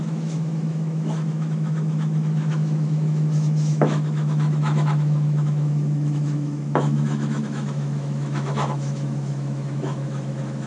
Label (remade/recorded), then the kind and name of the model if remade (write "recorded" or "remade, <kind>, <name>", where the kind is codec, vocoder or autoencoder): remade, autoencoder, DAC-VAE